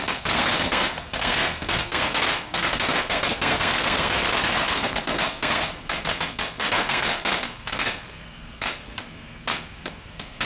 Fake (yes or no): yes